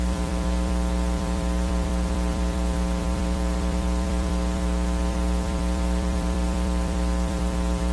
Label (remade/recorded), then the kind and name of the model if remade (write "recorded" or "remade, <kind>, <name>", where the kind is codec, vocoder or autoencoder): remade, vocoder, BigVGAN v2